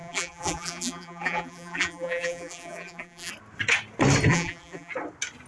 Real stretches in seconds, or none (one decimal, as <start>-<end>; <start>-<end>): 3.3-4.3; 4.9-5.5